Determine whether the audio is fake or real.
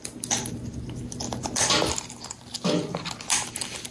real